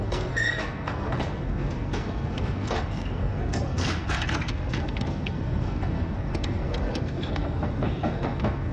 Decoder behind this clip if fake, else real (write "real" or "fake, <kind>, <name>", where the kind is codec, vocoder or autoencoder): fake, codec, SNAC